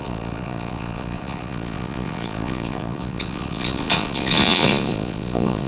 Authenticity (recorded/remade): remade